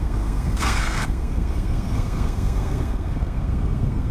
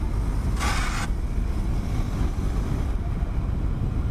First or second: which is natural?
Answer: second